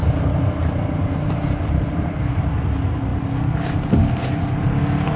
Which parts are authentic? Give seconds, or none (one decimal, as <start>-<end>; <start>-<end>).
2.4-5.2